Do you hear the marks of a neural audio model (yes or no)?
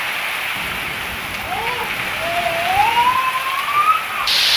no